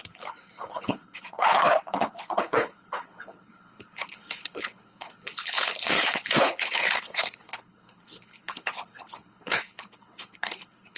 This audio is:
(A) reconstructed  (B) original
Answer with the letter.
A